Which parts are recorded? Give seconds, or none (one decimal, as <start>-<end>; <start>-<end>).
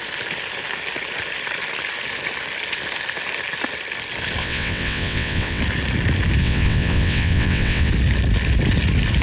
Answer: 0.0-4.4; 5.6-6.4; 7.9-9.2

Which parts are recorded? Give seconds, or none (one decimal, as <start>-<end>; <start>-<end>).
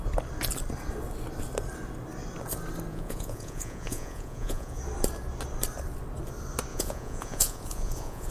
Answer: 0.0-2.9; 4.8-6.7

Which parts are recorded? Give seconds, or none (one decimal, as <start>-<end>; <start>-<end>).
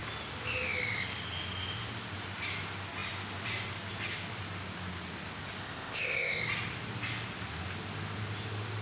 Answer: 0.0-5.6; 6.4-8.8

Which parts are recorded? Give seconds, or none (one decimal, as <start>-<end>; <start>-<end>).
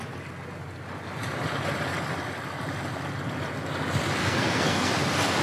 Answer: 0.0-4.2; 4.9-5.4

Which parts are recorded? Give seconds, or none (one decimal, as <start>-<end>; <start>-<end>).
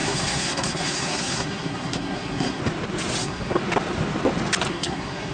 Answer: 2.6-3.2; 3.6-4.7